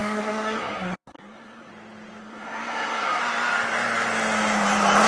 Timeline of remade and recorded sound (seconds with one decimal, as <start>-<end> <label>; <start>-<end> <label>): 0.0-1.7 remade; 1.7-2.2 recorded; 2.2-3.2 remade; 3.2-5.1 recorded

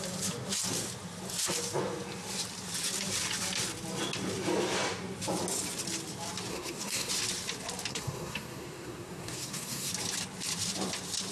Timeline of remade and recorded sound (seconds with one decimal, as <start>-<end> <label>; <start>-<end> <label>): 0.0-6.5 recorded; 6.5-7.1 remade; 7.1-7.9 recorded; 7.9-9.9 remade; 9.9-11.3 recorded

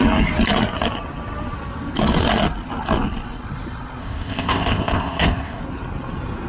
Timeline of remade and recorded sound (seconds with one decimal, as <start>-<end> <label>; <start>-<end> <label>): 0.0-4.0 recorded; 4.0-5.6 remade; 5.6-6.5 recorded

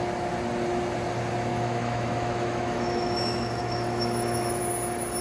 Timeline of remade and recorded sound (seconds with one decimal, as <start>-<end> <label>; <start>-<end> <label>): 0.0-1.5 recorded; 1.5-4.6 remade; 4.6-5.2 recorded

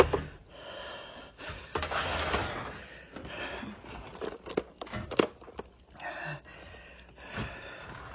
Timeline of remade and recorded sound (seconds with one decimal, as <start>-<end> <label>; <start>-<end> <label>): 0.0-1.0 recorded; 1.0-1.7 remade; 1.7-8.1 recorded

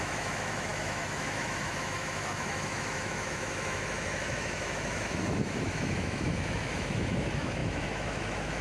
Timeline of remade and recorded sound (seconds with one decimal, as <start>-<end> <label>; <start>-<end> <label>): 0.0-8.6 remade

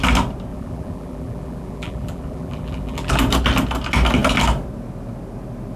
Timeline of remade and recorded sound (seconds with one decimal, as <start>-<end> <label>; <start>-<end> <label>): 0.0-0.5 recorded; 0.5-3.1 remade; 3.1-5.8 recorded

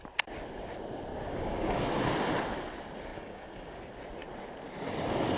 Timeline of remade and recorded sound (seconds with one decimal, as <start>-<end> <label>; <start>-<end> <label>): 0.0-1.1 recorded; 1.1-1.8 remade; 1.8-3.1 recorded; 3.1-3.8 remade; 3.8-5.4 recorded